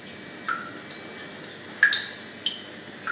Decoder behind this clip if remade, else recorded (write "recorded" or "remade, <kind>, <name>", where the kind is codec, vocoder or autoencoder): recorded